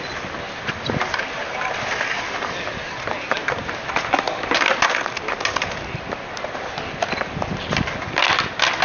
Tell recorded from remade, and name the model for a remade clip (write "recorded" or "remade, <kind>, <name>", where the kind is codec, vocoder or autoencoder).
recorded